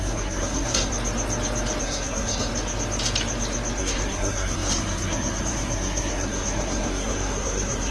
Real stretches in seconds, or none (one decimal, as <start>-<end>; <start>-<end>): 0.9-1.8; 2.5-3.8